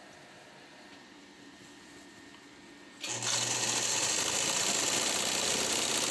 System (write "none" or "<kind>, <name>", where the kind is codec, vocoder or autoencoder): none